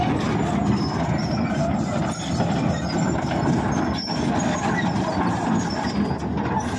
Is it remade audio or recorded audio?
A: recorded